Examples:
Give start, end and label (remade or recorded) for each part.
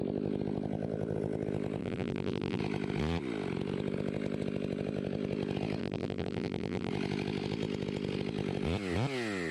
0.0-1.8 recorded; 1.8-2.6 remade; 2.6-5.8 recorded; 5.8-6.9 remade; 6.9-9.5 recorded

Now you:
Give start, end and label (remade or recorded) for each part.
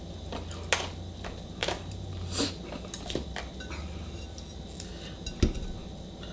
0.0-1.6 recorded; 1.6-2.5 remade; 2.5-6.3 recorded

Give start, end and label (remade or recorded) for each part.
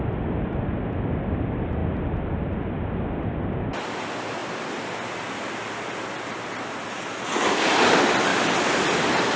0.0-1.8 recorded; 1.8-2.3 remade; 2.3-4.4 recorded; 4.4-5.7 remade; 5.7-8.3 recorded; 8.3-9.4 remade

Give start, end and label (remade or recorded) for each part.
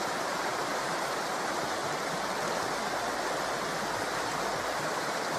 0.0-1.8 remade; 1.8-4.0 recorded; 4.0-5.4 remade